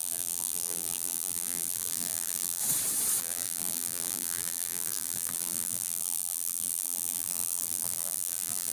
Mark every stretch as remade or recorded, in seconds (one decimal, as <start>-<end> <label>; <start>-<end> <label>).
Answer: 0.0-2.6 remade; 2.6-3.2 recorded; 3.2-8.7 remade